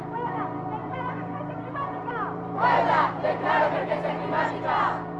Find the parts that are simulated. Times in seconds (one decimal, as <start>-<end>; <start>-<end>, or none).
0.8-3.9